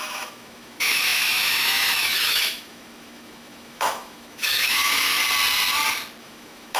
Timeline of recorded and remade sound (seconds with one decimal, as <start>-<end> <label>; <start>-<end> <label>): 0.0-5.2 remade; 5.2-6.2 recorded; 6.2-6.8 remade